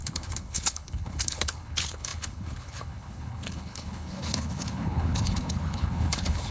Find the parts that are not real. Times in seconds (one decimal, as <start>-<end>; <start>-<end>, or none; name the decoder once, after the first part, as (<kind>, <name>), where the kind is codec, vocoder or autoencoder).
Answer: 0.0-6.5 (codec, HILCodec)